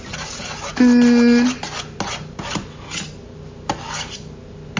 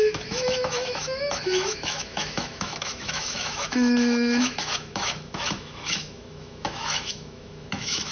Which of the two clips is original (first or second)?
first